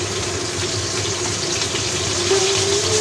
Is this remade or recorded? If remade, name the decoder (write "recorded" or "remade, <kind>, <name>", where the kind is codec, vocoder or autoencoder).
recorded